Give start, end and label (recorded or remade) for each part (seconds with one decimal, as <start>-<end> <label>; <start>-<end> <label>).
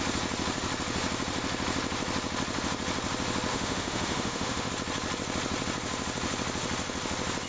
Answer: 0.0-3.5 recorded; 3.5-4.7 remade; 4.7-7.5 recorded